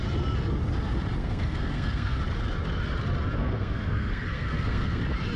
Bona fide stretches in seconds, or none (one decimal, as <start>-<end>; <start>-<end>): 0.0-1.2; 2.2-3.4; 5.0-5.4